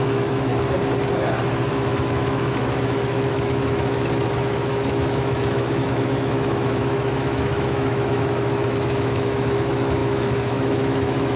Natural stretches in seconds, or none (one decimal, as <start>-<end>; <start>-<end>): 0.5-1.7